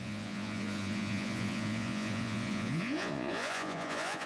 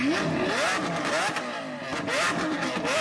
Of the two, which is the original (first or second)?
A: second